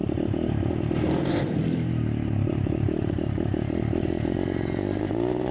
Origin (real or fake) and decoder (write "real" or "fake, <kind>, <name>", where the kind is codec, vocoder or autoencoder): fake, vocoder, BigVGAN v2